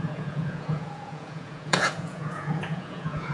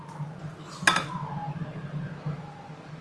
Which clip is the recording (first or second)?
second